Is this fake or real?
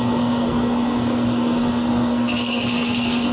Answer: fake